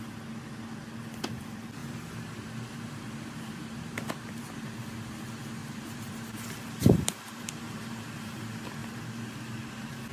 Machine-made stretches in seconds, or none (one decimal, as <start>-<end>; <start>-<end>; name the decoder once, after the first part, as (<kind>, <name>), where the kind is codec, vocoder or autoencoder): 1.8-4.4 (vocoder, BigVGAN v2); 5.6-8.4; 8.8-9.7